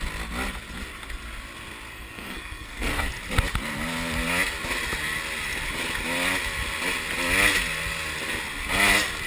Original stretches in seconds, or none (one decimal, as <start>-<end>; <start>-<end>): 0.0-1.9; 3.0-9.3